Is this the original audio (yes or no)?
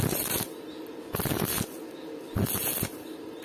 yes